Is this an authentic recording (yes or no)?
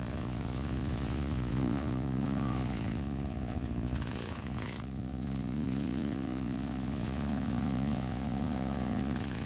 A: no